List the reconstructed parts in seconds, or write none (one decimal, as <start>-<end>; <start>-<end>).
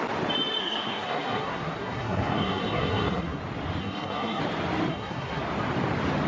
0.6-3.4; 3.8-4.4; 4.9-5.4